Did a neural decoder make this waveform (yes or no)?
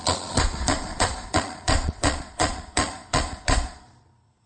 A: yes